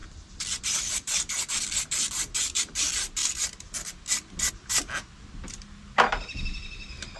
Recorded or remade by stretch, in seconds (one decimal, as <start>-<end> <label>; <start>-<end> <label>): 0.0-7.2 recorded